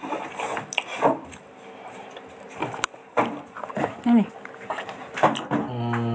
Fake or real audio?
real